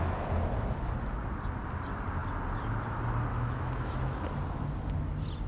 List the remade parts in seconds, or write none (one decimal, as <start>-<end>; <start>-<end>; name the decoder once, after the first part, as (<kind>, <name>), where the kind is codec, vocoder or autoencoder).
3.3-4.2 (autoencoder, DAC-VAE)